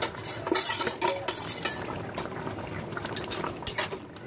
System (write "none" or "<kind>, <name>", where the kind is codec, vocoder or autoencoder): none